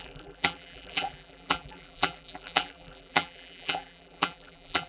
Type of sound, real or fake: fake